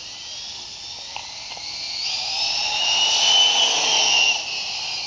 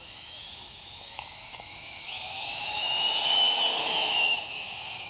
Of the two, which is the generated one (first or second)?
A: second